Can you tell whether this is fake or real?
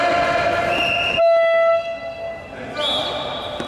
real